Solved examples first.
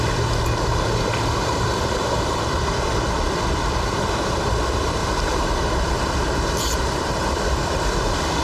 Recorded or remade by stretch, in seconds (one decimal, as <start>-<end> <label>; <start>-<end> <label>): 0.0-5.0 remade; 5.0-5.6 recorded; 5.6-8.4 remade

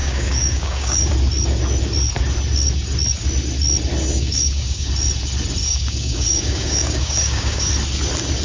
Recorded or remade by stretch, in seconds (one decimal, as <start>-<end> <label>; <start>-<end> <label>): 0.0-1.1 remade; 1.1-4.1 recorded; 4.1-4.9 remade; 4.9-5.6 recorded; 5.6-7.7 remade; 7.7-8.4 recorded

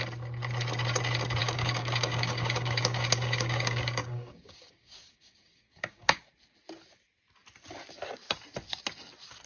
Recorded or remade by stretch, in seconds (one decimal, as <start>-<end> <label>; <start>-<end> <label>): 0.0-1.4 recorded; 1.4-6.3 remade; 6.3-9.5 recorded

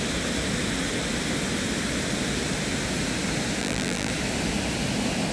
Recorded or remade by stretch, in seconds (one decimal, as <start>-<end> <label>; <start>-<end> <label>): 0.0-3.6 recorded; 3.6-4.1 remade; 4.1-5.3 recorded